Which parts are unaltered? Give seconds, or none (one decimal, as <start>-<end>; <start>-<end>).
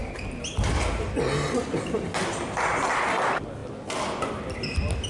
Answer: 0.0-5.1